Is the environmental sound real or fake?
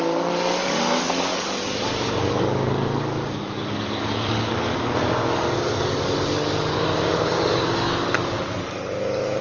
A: fake